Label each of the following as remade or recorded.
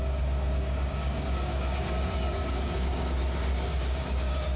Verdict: remade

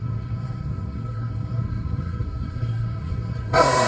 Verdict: remade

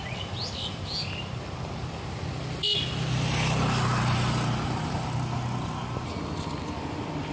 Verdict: recorded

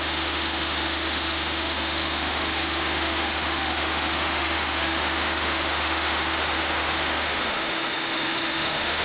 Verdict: remade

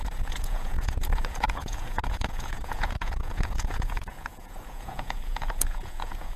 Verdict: remade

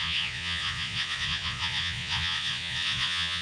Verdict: remade